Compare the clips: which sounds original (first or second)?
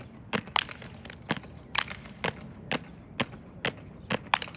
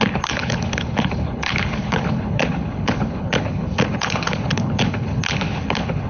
first